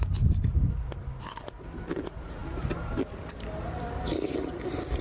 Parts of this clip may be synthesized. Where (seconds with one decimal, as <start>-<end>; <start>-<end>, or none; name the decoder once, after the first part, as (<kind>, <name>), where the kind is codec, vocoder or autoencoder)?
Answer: none